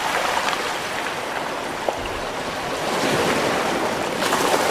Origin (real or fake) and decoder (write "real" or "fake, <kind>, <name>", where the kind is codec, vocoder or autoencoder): real